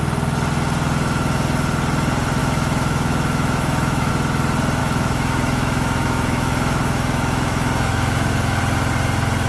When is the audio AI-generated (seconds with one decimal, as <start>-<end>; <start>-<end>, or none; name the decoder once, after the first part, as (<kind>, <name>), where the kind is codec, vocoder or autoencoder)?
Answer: 2.4-4.1 (autoencoder, DAC-VAE); 4.8-8.6